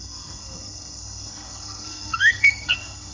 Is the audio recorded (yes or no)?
no